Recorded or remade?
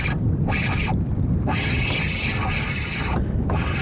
recorded